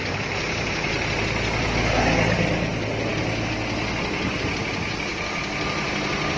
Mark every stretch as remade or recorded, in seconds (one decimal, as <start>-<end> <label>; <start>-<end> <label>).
0.0-6.4 recorded